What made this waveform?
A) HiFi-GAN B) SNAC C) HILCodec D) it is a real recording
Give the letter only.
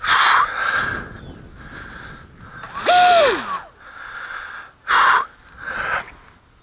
D